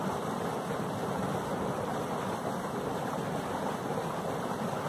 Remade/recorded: recorded